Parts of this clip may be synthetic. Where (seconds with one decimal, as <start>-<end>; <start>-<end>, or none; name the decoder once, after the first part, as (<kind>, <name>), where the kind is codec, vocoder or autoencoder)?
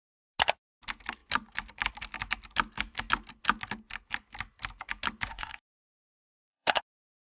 5.3-6.8 (codec, SNAC)